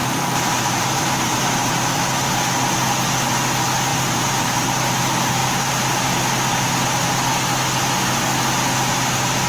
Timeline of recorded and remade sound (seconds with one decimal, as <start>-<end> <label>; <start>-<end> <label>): 0.0-2.3 remade; 2.3-3.9 recorded; 3.9-4.8 remade; 4.8-5.4 recorded; 5.4-6.1 remade; 6.1-9.5 recorded